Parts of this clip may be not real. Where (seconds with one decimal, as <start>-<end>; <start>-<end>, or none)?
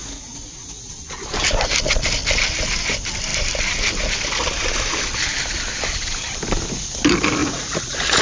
0.0-0.9; 7.4-8.2